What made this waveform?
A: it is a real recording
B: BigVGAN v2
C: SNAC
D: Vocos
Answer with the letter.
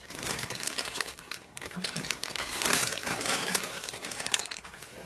C